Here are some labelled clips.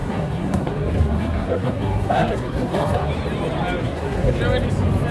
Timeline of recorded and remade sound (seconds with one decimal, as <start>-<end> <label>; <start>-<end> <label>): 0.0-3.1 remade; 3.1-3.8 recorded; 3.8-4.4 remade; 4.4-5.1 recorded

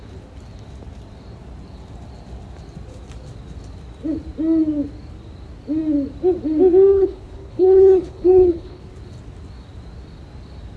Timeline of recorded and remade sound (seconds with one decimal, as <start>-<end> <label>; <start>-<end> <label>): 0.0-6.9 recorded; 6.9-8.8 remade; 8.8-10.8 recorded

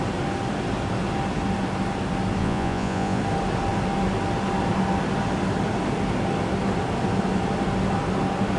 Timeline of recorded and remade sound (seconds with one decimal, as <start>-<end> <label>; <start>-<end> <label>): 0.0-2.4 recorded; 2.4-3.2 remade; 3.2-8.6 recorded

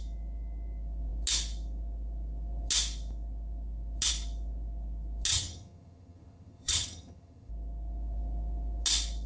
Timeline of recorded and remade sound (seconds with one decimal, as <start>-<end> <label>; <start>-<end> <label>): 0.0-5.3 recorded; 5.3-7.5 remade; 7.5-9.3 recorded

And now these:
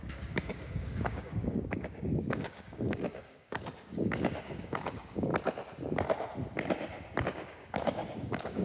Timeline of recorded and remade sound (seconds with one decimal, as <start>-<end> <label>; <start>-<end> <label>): 0.0-5.3 remade; 5.3-7.2 recorded; 7.2-8.6 remade

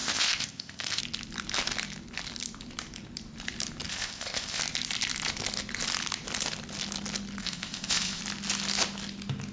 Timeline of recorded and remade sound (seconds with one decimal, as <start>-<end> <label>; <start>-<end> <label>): 0.0-1.0 remade; 1.0-3.9 recorded; 3.9-4.6 remade; 4.6-7.4 recorded; 7.4-8.2 remade; 8.2-9.5 recorded